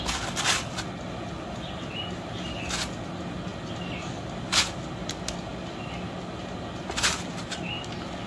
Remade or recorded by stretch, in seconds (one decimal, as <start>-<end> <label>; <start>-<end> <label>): 0.0-8.3 recorded

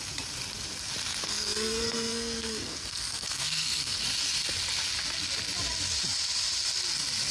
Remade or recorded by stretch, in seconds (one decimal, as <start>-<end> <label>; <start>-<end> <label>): 0.0-1.2 recorded; 1.2-4.0 remade; 4.0-7.3 recorded

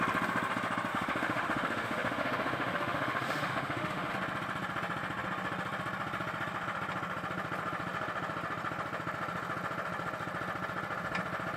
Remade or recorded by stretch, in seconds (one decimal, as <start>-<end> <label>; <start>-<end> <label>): 0.0-0.9 recorded; 0.9-4.1 remade; 4.1-11.6 recorded

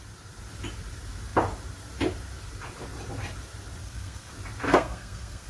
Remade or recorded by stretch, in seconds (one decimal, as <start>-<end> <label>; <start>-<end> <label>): 0.0-3.8 recorded; 3.8-4.3 remade; 4.3-4.7 recorded; 4.7-5.5 remade

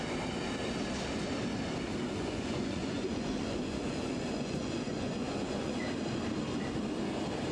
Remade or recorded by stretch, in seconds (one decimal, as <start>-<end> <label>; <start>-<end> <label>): 0.0-2.1 recorded; 2.1-5.8 remade; 5.8-7.5 recorded

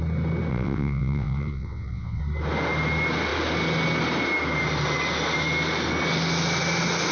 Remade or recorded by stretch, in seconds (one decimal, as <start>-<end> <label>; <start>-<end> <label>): 0.0-0.5 recorded; 0.5-2.2 remade; 2.2-7.1 recorded

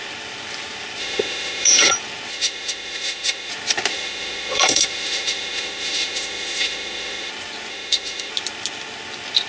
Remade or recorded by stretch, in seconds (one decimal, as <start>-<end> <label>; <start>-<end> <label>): 0.0-1.0 recorded; 1.0-1.9 remade; 1.9-2.3 recorded; 2.3-3.5 remade; 3.5-3.9 recorded; 3.9-7.3 remade; 7.3-7.7 recorded; 7.7-8.3 remade; 8.3-9.5 recorded

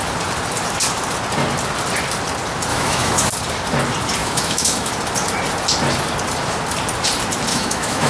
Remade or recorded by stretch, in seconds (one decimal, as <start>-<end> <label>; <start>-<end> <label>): 0.0-2.7 recorded; 2.7-3.3 remade; 3.3-4.2 recorded; 4.2-4.9 remade; 4.9-7.5 recorded; 7.5-8.1 remade